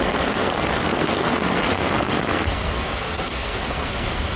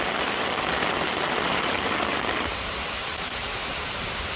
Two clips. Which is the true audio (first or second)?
second